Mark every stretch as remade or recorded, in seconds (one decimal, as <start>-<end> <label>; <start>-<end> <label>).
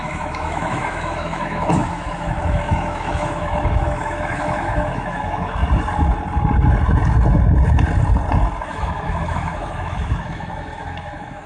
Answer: 0.0-5.6 remade; 5.6-8.6 recorded; 8.6-11.5 remade